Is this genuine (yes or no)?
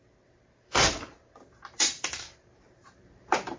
no